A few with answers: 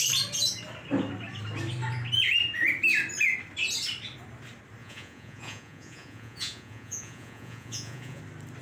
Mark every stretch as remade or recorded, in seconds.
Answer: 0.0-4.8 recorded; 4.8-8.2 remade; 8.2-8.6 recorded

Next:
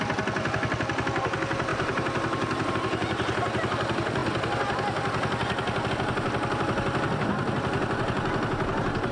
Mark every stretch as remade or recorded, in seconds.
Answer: 0.0-1.7 recorded; 1.7-2.7 remade; 2.7-9.1 recorded

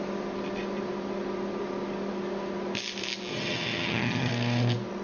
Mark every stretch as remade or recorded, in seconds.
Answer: 0.0-3.3 recorded; 3.3-4.3 remade; 4.3-5.0 recorded

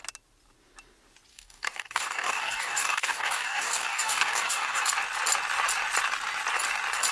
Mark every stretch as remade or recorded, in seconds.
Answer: 0.0-1.3 recorded; 1.3-4.8 remade; 4.8-7.1 recorded